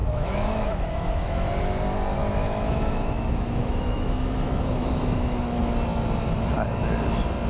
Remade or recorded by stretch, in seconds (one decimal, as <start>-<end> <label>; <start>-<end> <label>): 0.0-1.5 remade; 1.5-2.2 recorded; 2.2-5.6 remade; 5.6-7.5 recorded